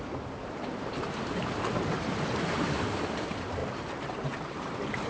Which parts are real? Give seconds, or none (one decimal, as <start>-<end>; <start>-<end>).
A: 0.0-0.4; 2.8-5.1